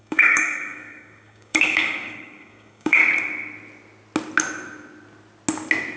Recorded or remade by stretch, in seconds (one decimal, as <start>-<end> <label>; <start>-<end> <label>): 0.0-3.0 remade; 3.0-6.0 recorded